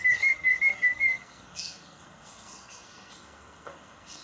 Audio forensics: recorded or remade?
remade